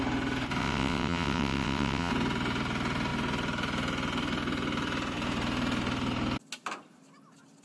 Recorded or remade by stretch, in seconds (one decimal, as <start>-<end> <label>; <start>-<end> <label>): 0.0-0.6 recorded; 0.6-2.1 remade; 2.1-7.6 recorded